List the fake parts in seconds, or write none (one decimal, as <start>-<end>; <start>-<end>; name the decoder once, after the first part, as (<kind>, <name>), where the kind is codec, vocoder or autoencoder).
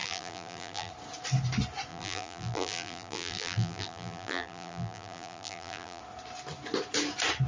0.0-0.9 (vocoder, BigVGAN v2); 1.9-6.0